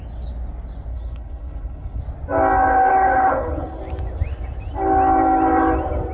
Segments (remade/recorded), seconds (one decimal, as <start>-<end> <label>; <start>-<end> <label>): 0.0-0.9 recorded; 0.9-2.0 remade; 2.0-2.9 recorded; 2.9-3.8 remade; 3.8-6.1 recorded